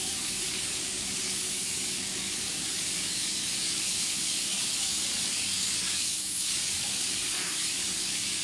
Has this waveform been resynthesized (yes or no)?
yes